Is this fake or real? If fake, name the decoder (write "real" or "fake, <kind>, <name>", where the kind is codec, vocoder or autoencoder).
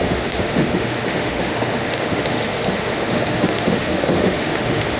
fake, autoencoder, DAC-VAE